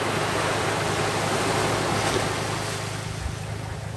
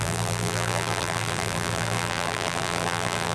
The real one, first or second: first